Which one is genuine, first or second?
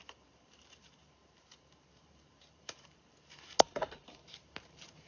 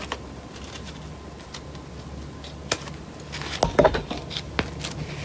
second